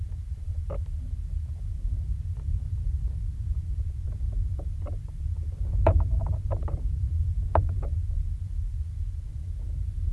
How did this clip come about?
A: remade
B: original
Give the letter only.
A